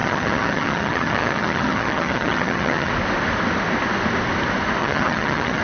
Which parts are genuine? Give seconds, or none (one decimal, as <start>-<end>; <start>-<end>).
2.9-4.8